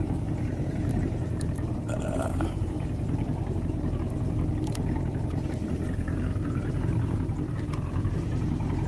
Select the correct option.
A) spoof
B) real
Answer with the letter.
A